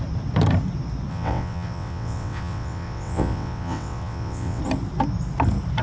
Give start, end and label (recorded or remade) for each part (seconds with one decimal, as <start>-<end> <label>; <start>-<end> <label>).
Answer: 0.0-1.1 recorded; 1.1-4.6 remade; 4.6-5.8 recorded